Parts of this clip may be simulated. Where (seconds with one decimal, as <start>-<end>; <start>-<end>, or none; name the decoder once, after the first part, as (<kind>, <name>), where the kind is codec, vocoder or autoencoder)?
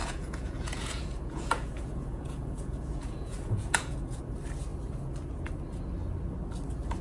0.0-4.2 (vocoder, Vocos)